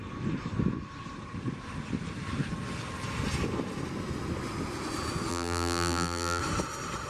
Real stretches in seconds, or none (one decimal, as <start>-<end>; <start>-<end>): 0.0-5.3; 6.4-7.1